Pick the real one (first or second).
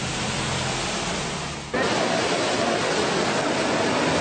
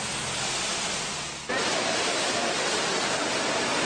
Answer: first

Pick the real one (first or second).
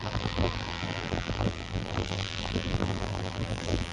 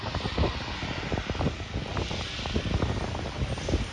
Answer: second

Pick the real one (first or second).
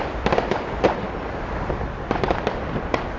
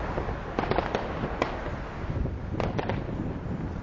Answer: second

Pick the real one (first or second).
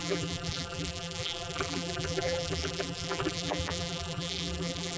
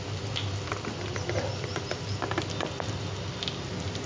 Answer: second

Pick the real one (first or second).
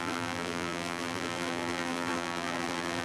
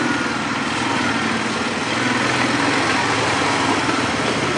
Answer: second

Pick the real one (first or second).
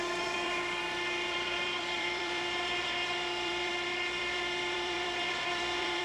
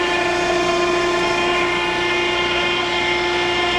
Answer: second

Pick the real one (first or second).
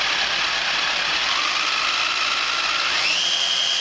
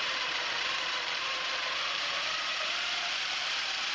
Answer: first